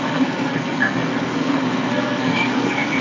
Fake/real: fake